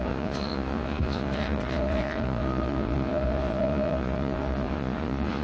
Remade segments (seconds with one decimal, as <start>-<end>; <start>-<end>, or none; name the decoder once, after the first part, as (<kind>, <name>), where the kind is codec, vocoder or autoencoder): 0.0-5.4 (vocoder, Vocos)

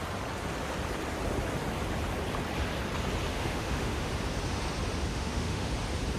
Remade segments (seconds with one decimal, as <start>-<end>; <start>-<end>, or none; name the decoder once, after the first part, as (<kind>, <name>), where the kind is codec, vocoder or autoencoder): 3.3-4.1 (autoencoder, DAC-VAE); 5.1-5.7

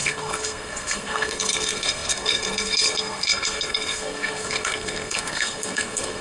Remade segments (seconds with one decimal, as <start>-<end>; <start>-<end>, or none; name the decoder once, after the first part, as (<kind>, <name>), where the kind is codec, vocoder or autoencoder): 0.0-6.2 (codec, SNAC)

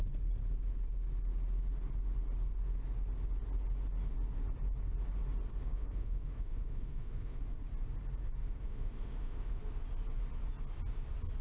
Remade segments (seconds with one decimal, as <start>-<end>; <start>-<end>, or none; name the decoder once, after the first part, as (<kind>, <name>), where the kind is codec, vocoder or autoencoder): 5.6-7.4 (autoencoder, DAC-VAE); 8.4-9.6

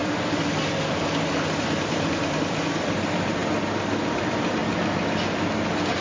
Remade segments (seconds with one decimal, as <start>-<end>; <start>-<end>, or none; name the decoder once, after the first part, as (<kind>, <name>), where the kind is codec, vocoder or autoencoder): 0.0-3.4 (vocoder, BigVGAN v2); 4.0-4.6